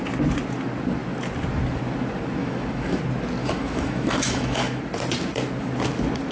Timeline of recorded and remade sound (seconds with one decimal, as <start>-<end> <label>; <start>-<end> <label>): 0.0-2.4 recorded; 2.4-3.0 remade; 3.0-3.4 recorded; 3.4-4.8 remade; 4.8-6.3 recorded